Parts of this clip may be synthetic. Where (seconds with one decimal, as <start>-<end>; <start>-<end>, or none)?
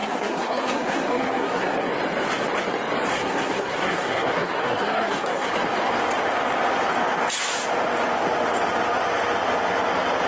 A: 0.0-1.9; 3.1-5.5